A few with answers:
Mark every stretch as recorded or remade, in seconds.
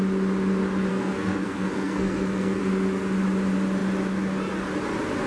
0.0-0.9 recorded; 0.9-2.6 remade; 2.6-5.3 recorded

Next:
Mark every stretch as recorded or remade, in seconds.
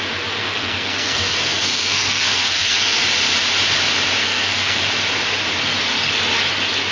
0.0-0.4 recorded; 0.4-3.0 remade; 3.0-4.2 recorded; 4.2-4.8 remade; 4.8-6.9 recorded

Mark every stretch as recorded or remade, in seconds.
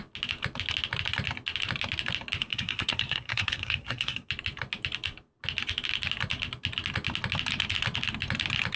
0.0-2.4 recorded; 2.4-4.3 remade; 4.3-8.8 recorded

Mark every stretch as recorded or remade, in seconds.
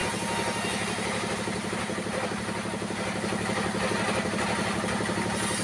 0.0-5.6 recorded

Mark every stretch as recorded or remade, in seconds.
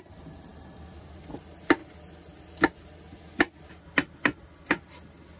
0.0-5.4 recorded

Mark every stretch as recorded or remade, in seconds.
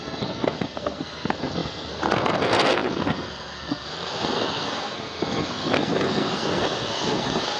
0.0-7.6 remade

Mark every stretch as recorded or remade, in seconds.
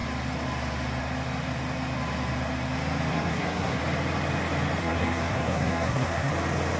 0.0-3.1 recorded; 3.1-3.8 remade; 3.8-4.8 recorded; 4.8-6.3 remade; 6.3-6.8 recorded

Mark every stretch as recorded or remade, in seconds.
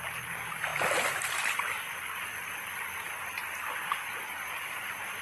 0.0-5.2 recorded